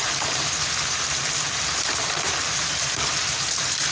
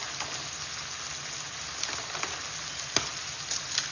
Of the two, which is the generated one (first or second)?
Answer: first